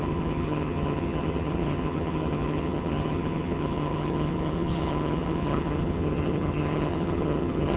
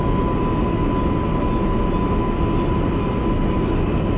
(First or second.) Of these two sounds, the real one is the second